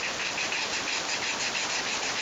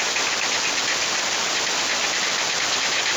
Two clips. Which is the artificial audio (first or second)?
first